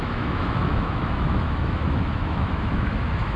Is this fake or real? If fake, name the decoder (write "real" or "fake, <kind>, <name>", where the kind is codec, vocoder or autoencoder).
fake, autoencoder, DAC-VAE